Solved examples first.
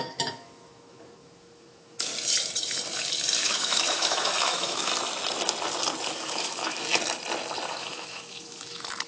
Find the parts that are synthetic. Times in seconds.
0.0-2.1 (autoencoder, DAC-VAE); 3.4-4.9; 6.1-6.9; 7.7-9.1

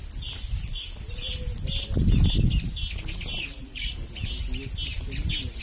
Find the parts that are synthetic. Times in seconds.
3.3-3.9 (vocoder, Vocos)

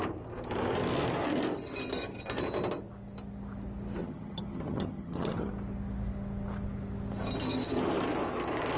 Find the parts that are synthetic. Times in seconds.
4.0-5.5 (vocoder, HiFi-GAN)

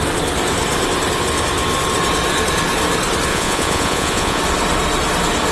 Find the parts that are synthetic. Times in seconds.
3.3-4.4 (vocoder, Vocos)